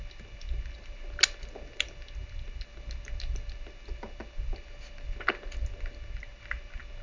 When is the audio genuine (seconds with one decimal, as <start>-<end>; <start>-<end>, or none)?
0.0-7.0